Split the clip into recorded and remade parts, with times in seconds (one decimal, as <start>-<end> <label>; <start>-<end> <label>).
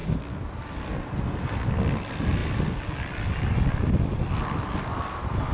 0.0-0.9 remade; 0.9-5.5 recorded